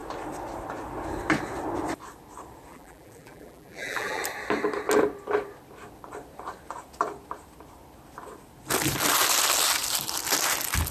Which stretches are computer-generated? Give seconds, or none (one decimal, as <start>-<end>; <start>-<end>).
2.7-4.2